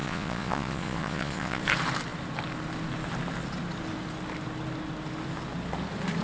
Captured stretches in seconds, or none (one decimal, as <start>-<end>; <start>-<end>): 1.6-6.2